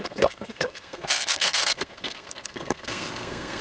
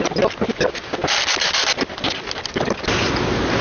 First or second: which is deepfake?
first